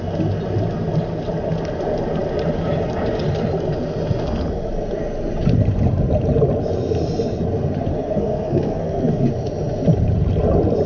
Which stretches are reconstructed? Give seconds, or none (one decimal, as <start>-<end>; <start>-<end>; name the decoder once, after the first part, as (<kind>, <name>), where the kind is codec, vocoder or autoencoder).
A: 7.9-9.3 (codec, SNAC)

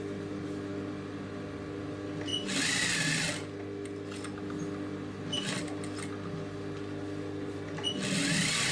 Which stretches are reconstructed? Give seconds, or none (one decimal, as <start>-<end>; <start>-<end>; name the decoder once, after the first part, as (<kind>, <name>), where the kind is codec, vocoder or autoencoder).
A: none

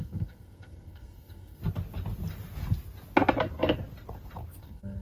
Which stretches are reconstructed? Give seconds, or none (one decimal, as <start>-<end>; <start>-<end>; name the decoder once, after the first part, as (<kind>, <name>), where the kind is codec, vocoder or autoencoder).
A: 0.0-1.6 (codec, SNAC); 4.6-5.0

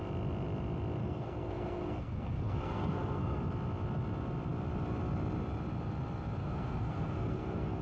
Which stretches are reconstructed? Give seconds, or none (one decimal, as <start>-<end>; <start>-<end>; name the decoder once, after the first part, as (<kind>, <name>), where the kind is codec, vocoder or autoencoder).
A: 1.0-3.4 (codec, SNAC); 6.4-7.8

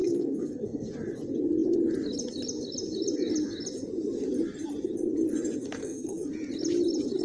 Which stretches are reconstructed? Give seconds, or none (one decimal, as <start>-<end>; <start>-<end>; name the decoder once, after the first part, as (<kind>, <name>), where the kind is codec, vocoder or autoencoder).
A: 0.0-0.9 (codec, SNAC); 5.8-6.3